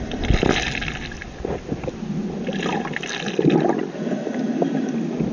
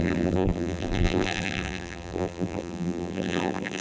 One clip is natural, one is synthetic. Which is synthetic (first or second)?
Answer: second